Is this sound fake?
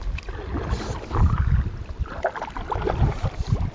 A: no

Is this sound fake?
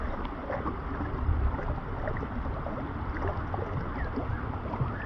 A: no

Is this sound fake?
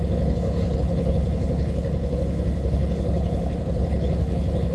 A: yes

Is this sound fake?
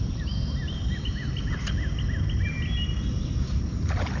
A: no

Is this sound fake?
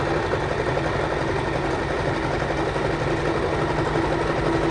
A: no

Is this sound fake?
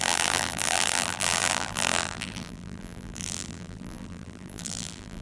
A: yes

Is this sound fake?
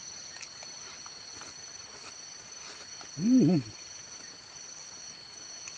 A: no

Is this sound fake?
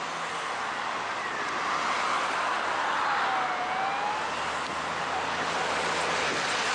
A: no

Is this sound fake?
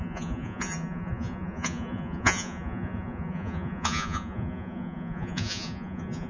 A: yes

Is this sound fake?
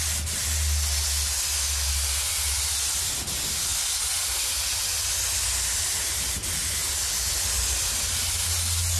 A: no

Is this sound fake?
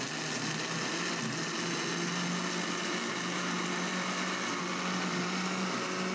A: no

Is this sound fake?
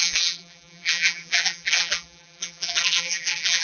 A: yes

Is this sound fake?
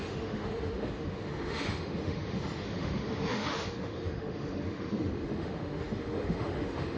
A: yes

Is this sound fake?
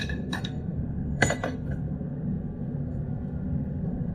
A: yes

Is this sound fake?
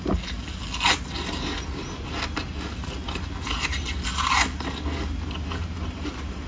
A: no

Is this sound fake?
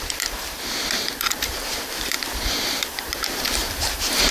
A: yes